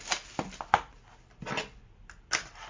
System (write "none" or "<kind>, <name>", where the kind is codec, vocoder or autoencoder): none